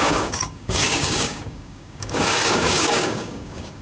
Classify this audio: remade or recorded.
remade